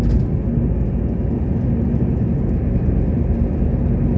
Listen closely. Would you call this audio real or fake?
real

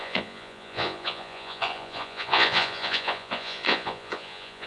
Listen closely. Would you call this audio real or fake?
fake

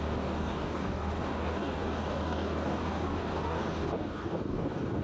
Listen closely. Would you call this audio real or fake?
fake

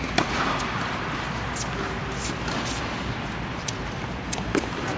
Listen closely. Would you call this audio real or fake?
real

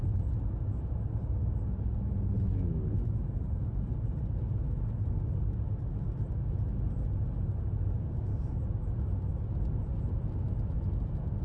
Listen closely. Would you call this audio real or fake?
real